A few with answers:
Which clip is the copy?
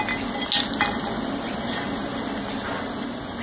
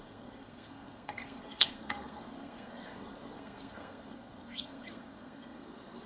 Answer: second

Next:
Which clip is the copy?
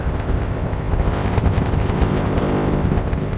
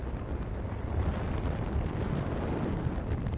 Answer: first